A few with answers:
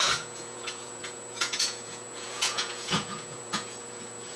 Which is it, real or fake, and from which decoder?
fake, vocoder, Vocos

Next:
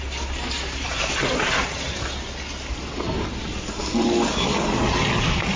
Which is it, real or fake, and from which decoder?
real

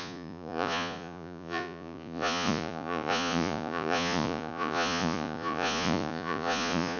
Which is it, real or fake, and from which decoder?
fake, vocoder, Vocos